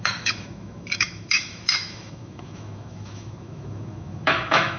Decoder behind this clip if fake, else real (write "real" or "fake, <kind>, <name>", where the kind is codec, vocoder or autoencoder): fake, autoencoder, DAC-VAE